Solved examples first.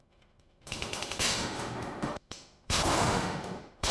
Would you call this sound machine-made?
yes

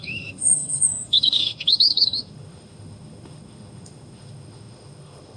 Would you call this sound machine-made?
yes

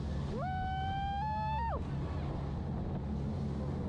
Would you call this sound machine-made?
no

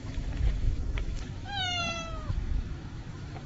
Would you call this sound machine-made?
yes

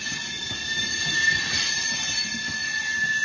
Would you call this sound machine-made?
no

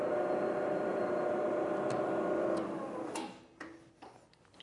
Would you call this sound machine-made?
no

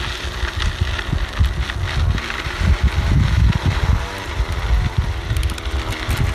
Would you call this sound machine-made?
no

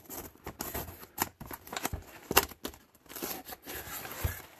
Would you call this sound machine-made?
no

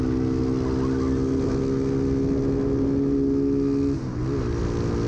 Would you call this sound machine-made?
no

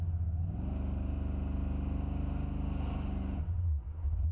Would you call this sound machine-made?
no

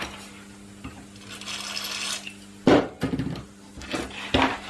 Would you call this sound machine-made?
no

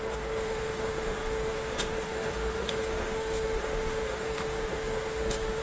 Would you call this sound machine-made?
yes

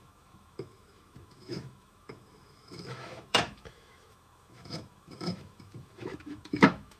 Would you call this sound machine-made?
yes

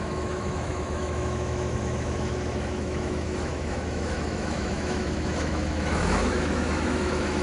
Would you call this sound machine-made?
yes